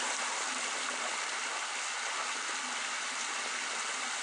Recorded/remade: recorded